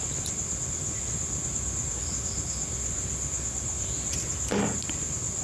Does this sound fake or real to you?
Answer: real